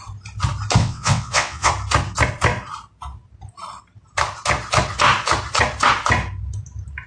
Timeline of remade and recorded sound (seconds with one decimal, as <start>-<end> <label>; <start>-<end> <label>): 0.0-0.8 recorded; 0.8-1.7 remade; 1.7-7.1 recorded

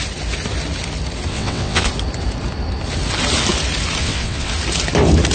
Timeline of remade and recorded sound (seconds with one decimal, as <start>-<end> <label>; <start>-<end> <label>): 0.0-1.3 recorded; 1.3-1.9 remade; 1.9-4.0 recorded; 4.0-4.5 remade; 4.5-5.3 recorded

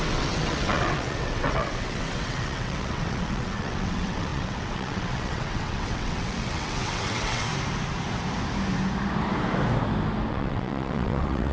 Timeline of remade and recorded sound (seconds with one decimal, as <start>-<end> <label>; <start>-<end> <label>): 0.0-7.5 remade; 7.5-10.3 recorded; 10.3-11.5 remade

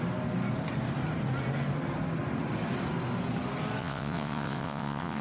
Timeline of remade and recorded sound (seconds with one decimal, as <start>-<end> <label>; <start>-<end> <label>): 0.0-3.8 recorded; 3.8-5.2 remade

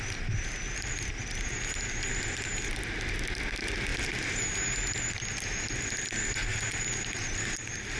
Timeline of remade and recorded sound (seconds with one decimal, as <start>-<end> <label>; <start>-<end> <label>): 0.0-8.0 recorded

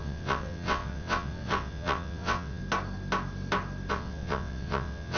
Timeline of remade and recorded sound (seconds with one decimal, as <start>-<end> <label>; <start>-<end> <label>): 0.0-2.6 remade; 2.6-3.9 recorded; 3.9-5.2 remade